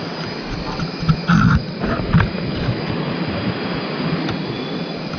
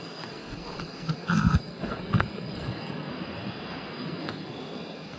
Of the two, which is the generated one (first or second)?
second